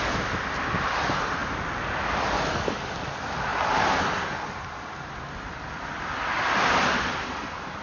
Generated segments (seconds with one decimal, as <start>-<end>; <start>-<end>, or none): none